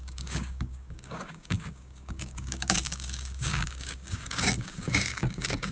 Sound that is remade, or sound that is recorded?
remade